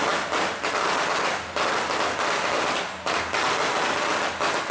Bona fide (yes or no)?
yes